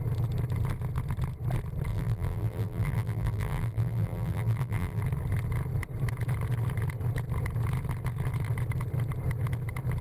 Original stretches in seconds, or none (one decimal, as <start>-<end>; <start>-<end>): 0.0-1.9; 5.0-10.0